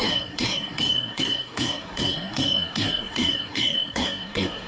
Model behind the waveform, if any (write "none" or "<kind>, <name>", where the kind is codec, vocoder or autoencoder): codec, SNAC